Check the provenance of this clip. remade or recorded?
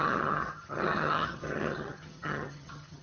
remade